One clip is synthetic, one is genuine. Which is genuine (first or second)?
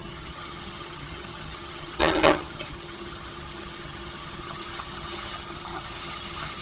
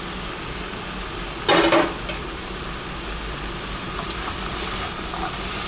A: second